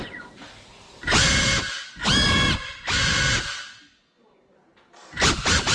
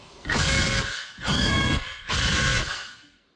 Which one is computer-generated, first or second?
second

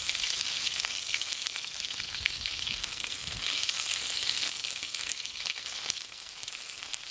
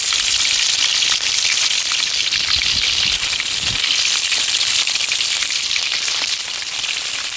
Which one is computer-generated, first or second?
first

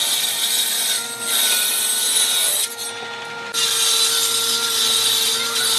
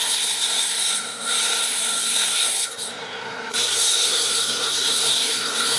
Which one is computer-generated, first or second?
second